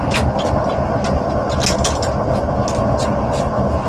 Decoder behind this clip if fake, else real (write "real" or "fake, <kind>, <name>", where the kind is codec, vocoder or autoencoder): real